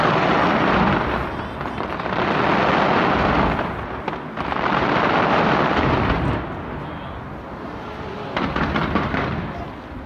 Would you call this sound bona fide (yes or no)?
yes